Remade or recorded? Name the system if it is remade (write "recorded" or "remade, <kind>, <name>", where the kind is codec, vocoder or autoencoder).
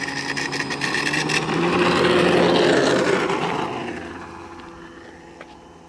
recorded